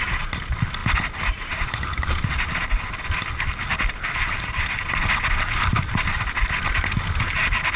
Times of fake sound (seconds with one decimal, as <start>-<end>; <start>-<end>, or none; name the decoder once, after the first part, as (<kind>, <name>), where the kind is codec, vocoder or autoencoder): none